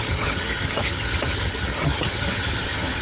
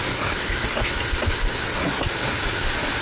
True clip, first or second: second